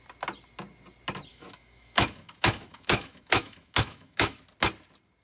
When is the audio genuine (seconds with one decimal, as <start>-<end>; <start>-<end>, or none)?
0.0-1.3; 4.4-5.2